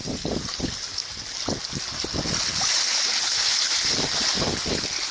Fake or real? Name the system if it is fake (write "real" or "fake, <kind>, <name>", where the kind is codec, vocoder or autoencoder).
real